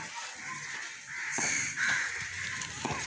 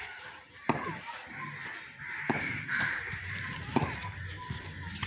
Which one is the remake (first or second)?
second